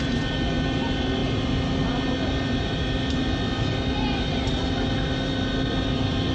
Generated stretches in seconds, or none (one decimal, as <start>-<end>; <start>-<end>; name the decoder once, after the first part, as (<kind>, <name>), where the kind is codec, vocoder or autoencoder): none